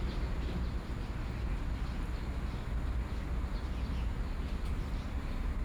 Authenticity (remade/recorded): recorded